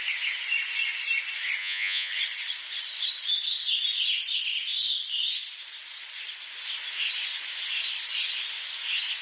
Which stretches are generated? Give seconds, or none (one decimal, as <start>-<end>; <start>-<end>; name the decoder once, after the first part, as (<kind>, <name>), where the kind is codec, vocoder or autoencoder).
1.6-2.1 (vocoder, Vocos)